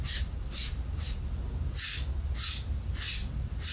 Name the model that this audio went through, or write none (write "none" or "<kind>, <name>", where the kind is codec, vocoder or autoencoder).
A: none